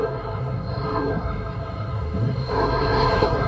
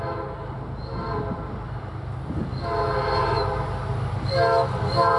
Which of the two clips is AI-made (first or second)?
first